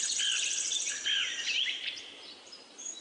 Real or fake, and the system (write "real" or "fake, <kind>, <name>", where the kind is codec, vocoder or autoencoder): real